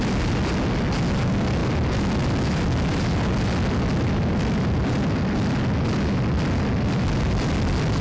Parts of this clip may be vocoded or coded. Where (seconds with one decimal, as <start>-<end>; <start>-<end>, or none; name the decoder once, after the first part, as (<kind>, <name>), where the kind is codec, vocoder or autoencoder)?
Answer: none